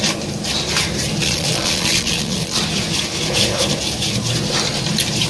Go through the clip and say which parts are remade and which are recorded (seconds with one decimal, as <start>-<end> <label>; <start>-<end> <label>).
0.0-1.2 recorded; 1.2-2.6 remade; 2.6-5.3 recorded